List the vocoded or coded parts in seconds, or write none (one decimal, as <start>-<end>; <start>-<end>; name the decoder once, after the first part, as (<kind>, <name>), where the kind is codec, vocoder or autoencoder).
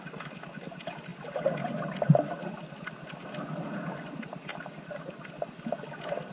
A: none